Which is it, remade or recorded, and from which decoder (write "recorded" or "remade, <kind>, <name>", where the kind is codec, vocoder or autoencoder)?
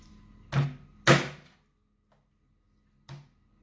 recorded